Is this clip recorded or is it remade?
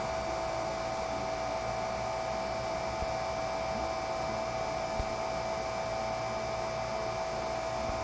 recorded